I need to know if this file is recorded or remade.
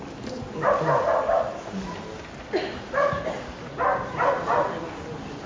recorded